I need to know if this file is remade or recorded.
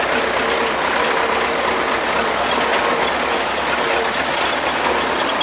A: recorded